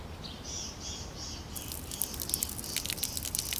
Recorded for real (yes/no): yes